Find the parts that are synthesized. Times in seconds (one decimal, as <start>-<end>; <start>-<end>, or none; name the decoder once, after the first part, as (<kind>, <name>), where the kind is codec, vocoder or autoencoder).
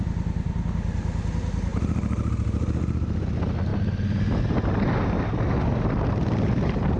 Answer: none